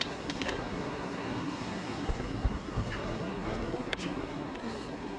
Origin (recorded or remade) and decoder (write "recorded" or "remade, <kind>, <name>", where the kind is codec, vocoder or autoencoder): remade, codec, SNAC